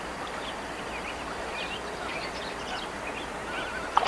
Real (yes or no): yes